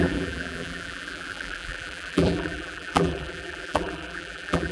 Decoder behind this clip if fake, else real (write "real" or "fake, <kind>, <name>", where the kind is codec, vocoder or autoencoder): fake, vocoder, BigVGAN v2